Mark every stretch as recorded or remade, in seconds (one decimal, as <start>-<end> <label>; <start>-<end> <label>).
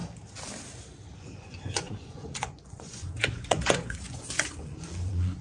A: 0.0-1.2 recorded; 1.2-5.4 remade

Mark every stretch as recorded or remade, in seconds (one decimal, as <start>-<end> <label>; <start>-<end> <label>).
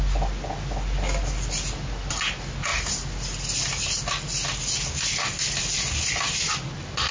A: 0.0-7.1 recorded